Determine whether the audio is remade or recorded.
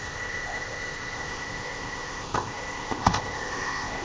remade